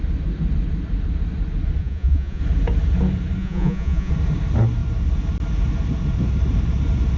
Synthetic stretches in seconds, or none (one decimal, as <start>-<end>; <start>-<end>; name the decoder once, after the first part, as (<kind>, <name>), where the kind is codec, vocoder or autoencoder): 1.8-2.4 (vocoder, Vocos); 3.4-4.1